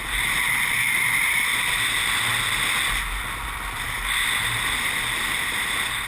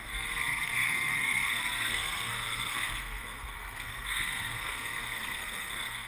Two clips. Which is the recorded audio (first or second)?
first